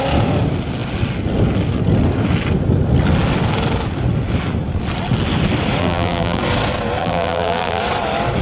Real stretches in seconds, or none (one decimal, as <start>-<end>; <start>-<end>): 0.0-5.8; 6.4-7.0; 7.8-8.4